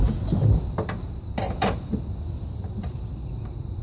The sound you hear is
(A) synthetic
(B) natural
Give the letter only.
A